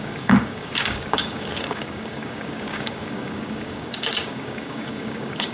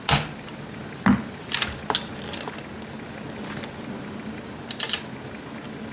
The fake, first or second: first